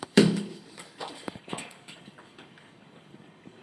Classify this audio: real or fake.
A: fake